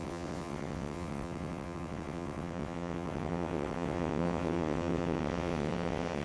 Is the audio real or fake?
fake